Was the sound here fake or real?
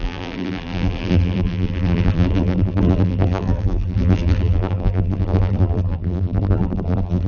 fake